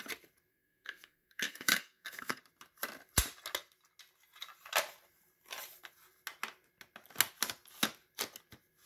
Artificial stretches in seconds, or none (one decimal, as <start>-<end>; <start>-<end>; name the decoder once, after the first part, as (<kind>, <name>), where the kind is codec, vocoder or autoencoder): 0.5-2.4 (codec, SNAC)